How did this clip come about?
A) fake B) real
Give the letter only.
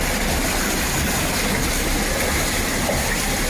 B